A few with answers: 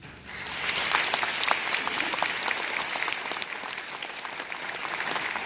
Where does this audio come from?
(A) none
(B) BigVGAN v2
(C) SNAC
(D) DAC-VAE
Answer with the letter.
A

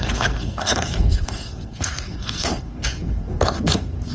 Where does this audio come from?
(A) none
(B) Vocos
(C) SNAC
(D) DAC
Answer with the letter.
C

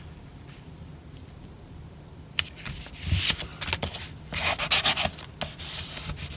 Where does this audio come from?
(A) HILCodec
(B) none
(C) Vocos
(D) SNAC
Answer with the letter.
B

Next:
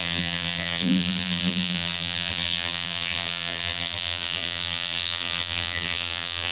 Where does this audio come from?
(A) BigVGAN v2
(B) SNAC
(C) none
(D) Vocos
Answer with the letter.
A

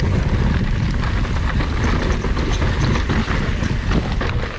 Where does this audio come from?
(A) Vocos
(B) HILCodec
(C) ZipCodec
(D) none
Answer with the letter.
D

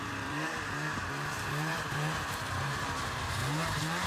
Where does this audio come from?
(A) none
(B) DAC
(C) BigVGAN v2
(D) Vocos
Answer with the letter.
C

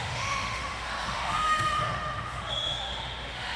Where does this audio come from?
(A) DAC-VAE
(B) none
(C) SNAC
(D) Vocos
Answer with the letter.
A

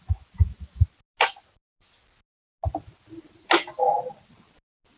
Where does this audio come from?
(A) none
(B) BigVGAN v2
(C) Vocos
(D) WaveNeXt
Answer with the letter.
A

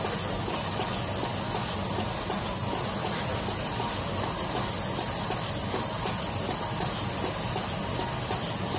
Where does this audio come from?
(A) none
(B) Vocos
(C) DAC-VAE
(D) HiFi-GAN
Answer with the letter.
A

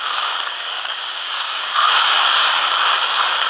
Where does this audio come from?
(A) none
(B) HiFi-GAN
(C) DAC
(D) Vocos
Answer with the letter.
C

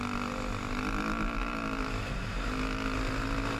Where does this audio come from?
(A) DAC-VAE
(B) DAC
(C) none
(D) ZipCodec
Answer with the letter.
C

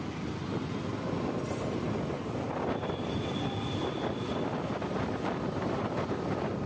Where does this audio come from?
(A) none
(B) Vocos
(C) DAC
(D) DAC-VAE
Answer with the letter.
A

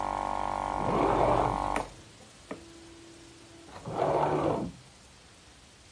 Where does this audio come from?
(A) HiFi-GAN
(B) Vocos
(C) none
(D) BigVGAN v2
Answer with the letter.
C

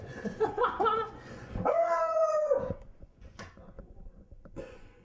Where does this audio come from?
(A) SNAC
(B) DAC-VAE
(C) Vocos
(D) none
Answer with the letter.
C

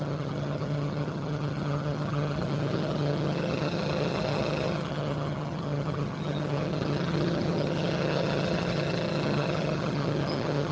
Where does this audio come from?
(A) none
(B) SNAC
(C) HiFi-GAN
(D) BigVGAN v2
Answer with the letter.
C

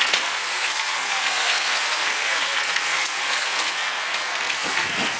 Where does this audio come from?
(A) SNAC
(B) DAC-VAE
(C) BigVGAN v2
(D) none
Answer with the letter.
A